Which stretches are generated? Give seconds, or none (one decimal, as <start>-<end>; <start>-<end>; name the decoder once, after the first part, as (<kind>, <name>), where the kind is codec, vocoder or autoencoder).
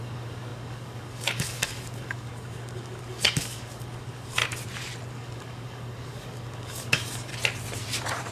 0.0-4.4 (codec, DAC); 5.1-7.3